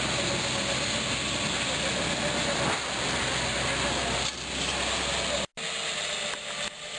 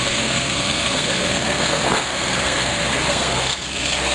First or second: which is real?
first